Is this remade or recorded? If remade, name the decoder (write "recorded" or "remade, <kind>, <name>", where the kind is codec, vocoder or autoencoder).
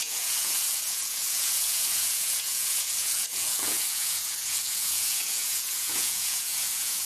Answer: remade, vocoder, Vocos